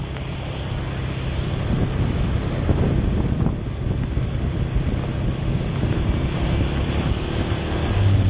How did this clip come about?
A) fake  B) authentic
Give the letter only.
B